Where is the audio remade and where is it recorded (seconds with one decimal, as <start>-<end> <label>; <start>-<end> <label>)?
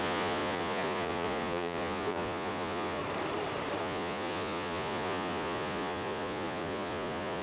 0.0-3.0 remade; 3.0-3.8 recorded; 3.8-7.4 remade